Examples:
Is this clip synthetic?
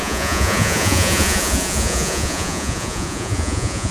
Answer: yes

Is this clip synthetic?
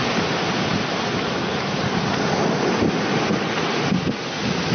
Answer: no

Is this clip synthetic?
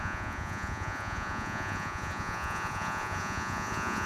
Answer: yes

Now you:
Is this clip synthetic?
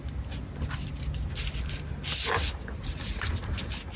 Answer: no